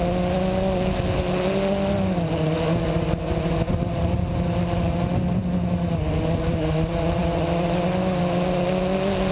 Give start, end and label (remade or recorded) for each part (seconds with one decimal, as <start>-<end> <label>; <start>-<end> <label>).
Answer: 0.0-9.3 recorded